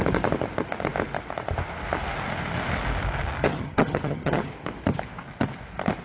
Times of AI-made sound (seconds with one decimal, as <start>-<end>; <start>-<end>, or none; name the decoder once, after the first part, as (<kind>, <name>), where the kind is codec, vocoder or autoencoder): 3.4-4.5 (vocoder, HiFi-GAN)